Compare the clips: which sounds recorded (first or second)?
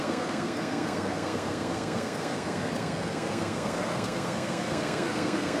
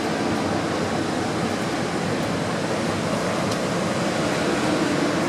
second